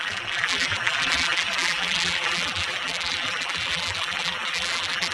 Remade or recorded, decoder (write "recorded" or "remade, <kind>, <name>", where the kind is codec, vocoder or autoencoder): remade, vocoder, BigVGAN v2